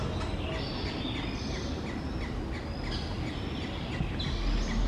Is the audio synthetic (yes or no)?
no